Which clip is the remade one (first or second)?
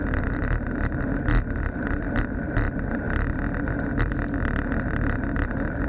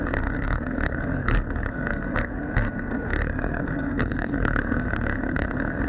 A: second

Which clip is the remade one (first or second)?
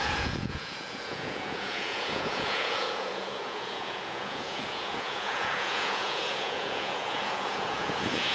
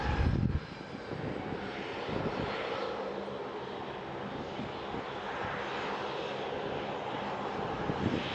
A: first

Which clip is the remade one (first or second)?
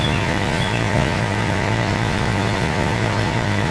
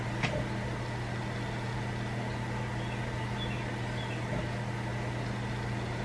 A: first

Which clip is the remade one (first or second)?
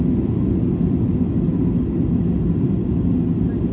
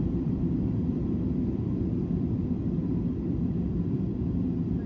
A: second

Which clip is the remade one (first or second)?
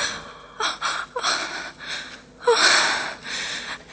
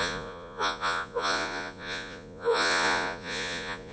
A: second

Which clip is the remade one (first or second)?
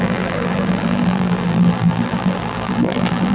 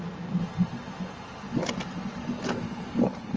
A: first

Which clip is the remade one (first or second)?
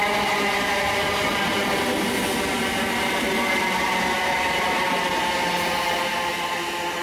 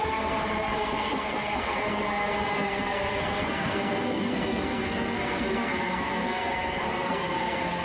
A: second